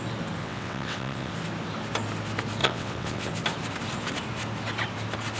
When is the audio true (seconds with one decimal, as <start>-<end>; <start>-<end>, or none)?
0.0-0.4; 1.3-2.6; 3.3-5.4